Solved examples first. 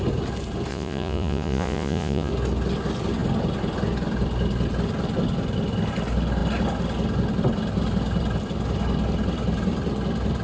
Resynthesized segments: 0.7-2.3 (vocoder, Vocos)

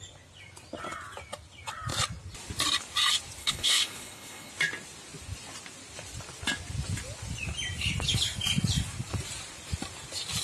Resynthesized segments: 3.4-4.5 (codec, HILCodec)

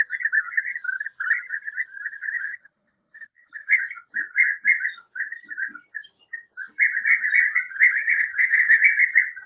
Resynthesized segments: 2.4-3.8 (codec, HILCodec); 7.7-8.8

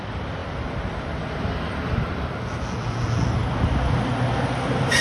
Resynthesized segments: none

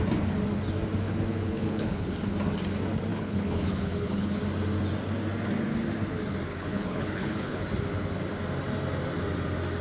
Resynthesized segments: 1.3-2.1 (codec, HILCodec); 3.1-4.4; 6.5-7.6